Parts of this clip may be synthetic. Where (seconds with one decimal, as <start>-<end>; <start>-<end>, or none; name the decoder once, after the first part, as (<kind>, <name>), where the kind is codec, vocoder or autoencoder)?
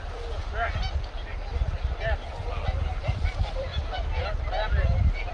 0.0-1.3 (vocoder, BigVGAN v2); 2.9-3.7